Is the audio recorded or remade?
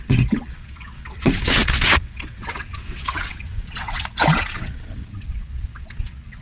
remade